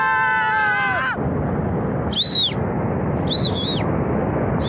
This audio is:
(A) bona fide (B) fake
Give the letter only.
A